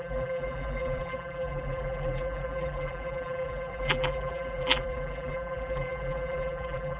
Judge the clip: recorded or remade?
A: remade